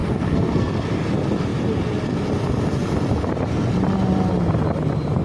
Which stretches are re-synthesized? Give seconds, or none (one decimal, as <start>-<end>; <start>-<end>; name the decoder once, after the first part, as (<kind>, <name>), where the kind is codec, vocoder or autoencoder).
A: 0.0-0.7 (codec, SNAC)